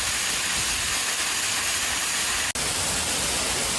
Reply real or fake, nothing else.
real